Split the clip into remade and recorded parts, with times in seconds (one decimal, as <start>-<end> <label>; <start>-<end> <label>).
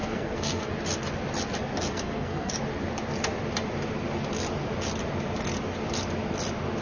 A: 0.0-0.7 remade; 0.7-1.9 recorded; 1.9-2.5 remade; 2.5-6.8 recorded